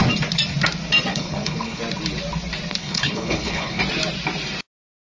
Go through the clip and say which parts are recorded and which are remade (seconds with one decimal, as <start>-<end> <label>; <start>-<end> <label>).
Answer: 0.0-1.1 recorded; 1.1-1.8 remade; 1.8-2.8 recorded; 2.8-3.8 remade; 3.8-5.1 recorded